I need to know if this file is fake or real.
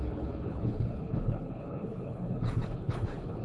fake